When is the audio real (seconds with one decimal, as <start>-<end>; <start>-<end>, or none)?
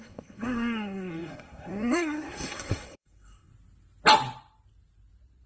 3.5-5.5